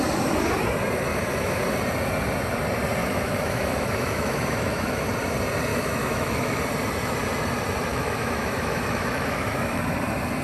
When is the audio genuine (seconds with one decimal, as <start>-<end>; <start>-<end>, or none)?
0.0-1.1; 1.6-3.0; 5.0-5.7; 6.6-7.9; 9.8-10.4